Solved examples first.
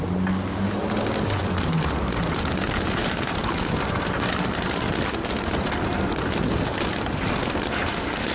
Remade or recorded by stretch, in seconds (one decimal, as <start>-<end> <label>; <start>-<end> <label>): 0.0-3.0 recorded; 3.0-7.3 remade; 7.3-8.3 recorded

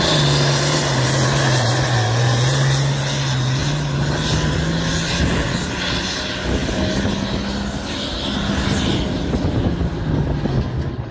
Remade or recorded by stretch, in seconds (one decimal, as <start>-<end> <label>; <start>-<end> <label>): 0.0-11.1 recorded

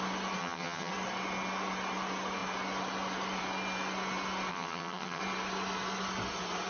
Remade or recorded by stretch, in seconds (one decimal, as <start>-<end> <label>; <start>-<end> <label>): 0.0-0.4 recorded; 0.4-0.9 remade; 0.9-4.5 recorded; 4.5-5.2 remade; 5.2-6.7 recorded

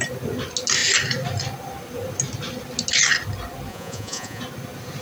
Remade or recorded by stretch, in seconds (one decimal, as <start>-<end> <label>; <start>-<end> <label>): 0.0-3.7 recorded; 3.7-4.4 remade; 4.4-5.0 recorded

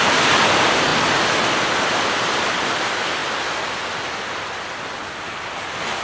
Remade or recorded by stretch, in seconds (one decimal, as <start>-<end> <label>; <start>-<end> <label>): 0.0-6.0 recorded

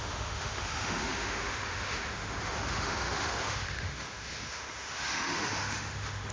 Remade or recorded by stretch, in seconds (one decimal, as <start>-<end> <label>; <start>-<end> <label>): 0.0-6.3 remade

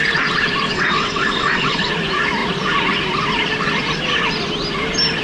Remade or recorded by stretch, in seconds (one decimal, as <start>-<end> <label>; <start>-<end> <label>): 0.0-0.7 recorded; 0.7-1.9 remade; 1.9-5.2 recorded